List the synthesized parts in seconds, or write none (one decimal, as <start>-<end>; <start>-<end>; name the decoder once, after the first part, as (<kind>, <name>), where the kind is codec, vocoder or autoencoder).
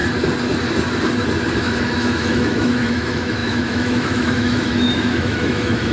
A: 1.6-5.9 (autoencoder, DAC-VAE)